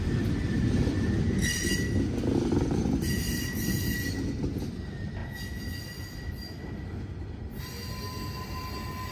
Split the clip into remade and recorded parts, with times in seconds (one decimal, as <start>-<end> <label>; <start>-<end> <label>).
0.0-9.1 recorded